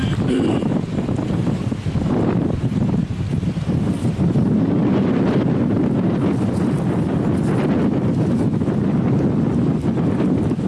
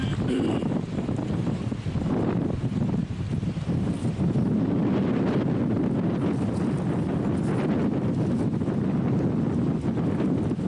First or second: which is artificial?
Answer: first